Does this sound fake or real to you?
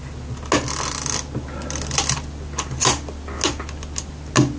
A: real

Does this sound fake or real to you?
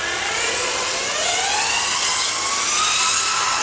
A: real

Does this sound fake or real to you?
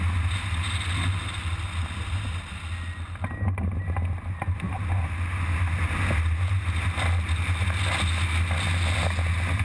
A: real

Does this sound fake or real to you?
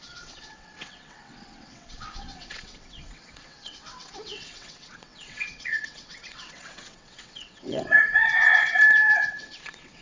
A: fake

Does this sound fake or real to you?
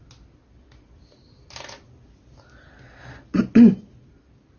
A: real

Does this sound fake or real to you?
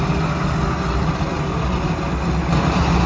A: real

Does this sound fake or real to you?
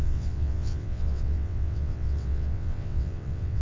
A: fake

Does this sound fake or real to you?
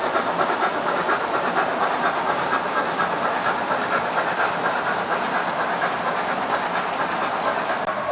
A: real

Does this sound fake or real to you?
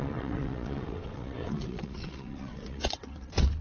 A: fake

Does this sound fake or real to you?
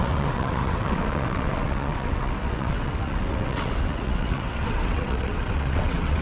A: fake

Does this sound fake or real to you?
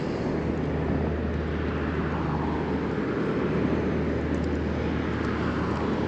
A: real